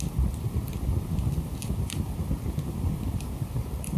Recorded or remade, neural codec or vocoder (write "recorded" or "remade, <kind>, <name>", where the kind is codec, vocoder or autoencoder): recorded